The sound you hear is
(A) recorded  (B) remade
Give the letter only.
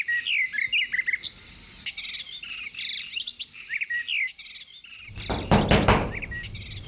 A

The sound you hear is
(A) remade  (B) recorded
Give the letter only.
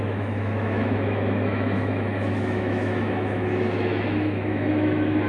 A